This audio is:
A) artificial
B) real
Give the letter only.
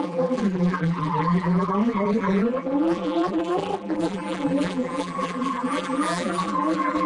A